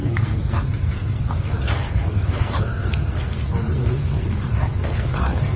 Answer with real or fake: fake